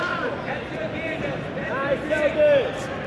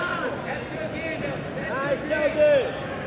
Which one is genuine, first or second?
second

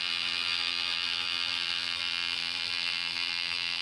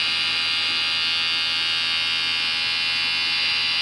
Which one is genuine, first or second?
second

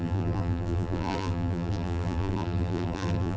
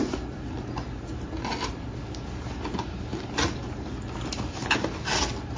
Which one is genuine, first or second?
second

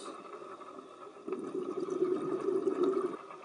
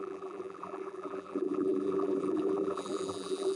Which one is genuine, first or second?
first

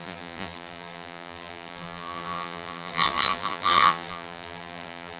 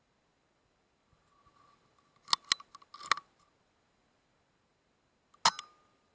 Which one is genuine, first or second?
second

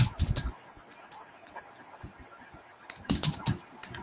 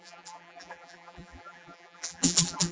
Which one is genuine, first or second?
first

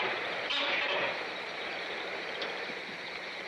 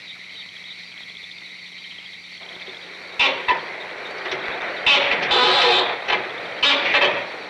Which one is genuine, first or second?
second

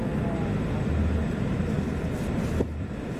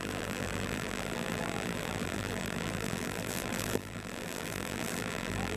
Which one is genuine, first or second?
first